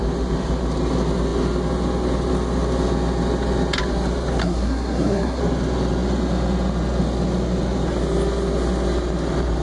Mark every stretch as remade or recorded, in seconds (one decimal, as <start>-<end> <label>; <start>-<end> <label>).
0.0-4.4 recorded; 4.4-5.4 remade; 5.4-9.6 recorded